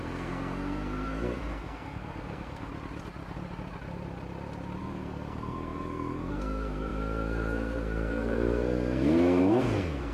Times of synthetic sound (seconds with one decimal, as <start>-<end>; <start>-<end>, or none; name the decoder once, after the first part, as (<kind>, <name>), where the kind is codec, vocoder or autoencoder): 0.0-2.7 (codec, SNAC); 4.8-10.1